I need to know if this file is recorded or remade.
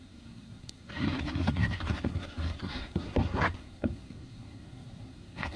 remade